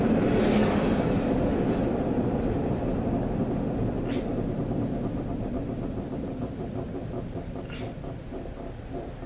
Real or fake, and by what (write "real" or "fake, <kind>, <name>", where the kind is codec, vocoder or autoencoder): real